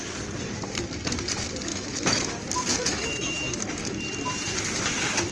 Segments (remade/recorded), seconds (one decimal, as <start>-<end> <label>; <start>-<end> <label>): 0.0-1.7 recorded; 1.7-2.3 remade; 2.3-2.7 recorded; 2.7-3.6 remade; 3.6-5.3 recorded